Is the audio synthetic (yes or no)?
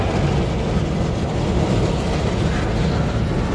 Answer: no